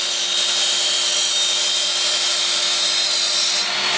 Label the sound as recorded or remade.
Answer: recorded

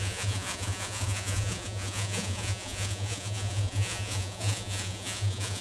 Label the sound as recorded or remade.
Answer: remade